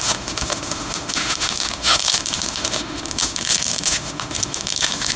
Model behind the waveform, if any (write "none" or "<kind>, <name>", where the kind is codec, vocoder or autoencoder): autoencoder, DAC-VAE